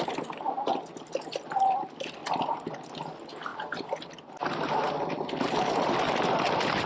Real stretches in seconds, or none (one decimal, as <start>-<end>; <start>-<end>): 0.0-6.9